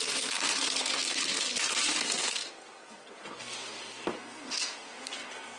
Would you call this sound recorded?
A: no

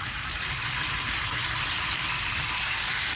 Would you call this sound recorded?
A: no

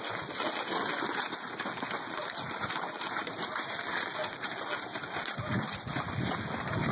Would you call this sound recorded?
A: yes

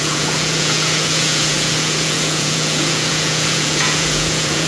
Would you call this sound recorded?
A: no